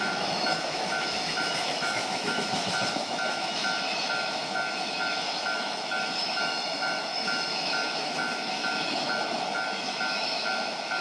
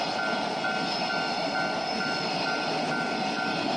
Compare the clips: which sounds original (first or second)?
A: second